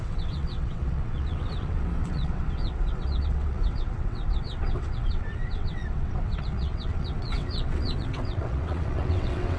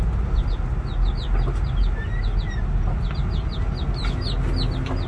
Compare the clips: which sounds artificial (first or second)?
first